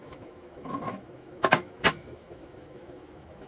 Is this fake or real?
fake